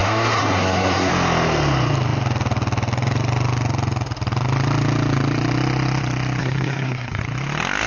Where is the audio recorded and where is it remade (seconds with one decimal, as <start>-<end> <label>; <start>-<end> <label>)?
0.0-1.1 remade; 1.1-6.4 recorded; 6.4-7.2 remade; 7.2-7.9 recorded